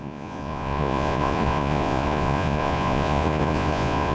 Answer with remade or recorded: remade